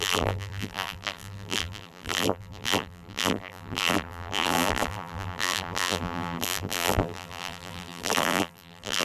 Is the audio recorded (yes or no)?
no